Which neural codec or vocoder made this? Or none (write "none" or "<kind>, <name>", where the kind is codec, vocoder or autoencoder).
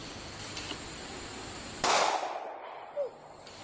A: none